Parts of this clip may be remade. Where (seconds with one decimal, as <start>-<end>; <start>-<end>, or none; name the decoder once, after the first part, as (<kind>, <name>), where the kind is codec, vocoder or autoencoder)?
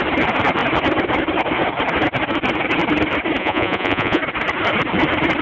3.4-4.2 (vocoder, Vocos)